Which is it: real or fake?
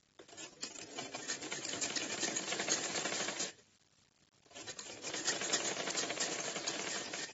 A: real